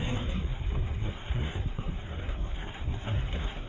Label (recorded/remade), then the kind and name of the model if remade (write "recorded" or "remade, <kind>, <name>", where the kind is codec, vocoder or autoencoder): remade, codec, SNAC